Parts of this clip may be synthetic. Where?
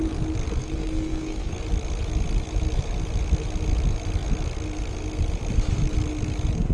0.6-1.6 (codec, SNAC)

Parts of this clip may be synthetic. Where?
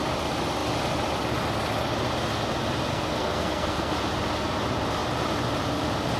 2.9-3.9 (codec, SNAC)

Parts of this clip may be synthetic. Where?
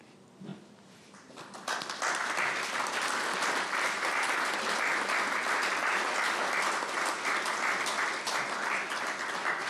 none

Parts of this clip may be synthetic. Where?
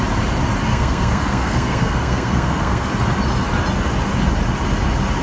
0.7-2.9 (codec, SNAC)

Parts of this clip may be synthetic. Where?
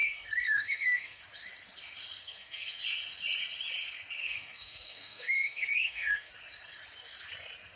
0.0-1.2 (codec, SNAC); 2.2-2.8; 4.2-6.3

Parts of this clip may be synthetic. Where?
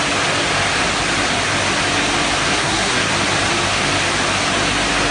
2.5-3.1 (codec, SNAC)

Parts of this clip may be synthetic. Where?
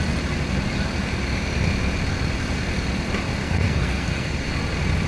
3.4-4.5 (codec, SNAC)